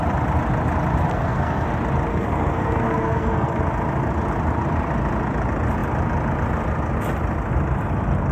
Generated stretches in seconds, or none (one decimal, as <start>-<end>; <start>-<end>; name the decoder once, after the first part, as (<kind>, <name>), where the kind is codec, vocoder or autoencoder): 1.1-1.7 (codec, SNAC); 2.1-3.6

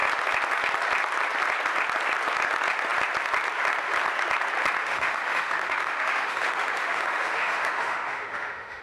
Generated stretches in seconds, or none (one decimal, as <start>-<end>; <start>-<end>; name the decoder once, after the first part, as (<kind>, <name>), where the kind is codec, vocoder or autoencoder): 4.8-8.8 (autoencoder, DAC-VAE)

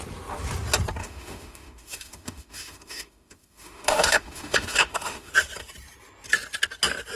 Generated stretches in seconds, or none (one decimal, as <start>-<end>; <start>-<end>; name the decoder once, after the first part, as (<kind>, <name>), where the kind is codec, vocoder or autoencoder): 1.0-5.3 (autoencoder, DAC-VAE)

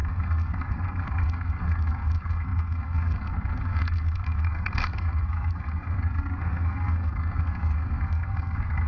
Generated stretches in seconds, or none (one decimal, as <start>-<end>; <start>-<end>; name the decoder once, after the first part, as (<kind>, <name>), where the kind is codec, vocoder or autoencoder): 0.0-8.9 (codec, SNAC)

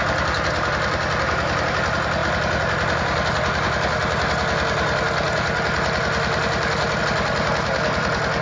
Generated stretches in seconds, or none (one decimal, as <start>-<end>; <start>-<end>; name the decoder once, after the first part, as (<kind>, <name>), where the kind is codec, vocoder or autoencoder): none

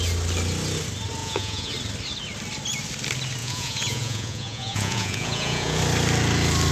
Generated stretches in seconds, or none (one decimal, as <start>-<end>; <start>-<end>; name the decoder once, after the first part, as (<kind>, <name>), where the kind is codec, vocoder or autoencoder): 1.2-1.7 (vocoder, Vocos); 3.4-5.8

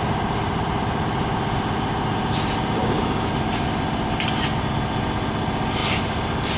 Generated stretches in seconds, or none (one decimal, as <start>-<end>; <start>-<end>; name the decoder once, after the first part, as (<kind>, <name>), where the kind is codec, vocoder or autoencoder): 2.8-3.3 (autoencoder, DAC-VAE)